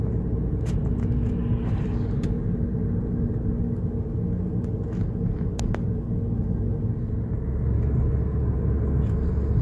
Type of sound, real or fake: real